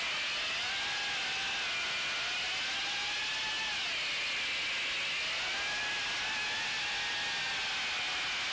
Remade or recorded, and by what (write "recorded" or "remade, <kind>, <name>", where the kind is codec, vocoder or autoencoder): recorded